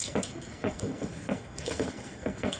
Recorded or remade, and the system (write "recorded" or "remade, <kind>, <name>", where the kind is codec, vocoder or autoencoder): remade, codec, SNAC